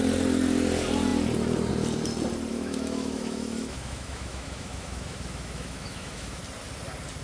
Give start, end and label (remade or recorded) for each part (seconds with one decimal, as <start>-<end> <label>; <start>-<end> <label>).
0.0-2.5 recorded; 2.5-6.4 remade; 6.4-7.2 recorded